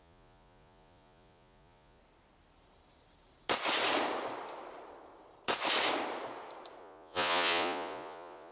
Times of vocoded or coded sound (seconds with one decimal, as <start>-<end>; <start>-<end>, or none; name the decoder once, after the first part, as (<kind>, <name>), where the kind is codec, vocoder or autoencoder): 0.0-2.0 (vocoder, Vocos); 6.8-8.5